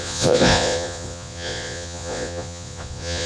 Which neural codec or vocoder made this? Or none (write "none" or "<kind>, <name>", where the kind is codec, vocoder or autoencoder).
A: vocoder, Vocos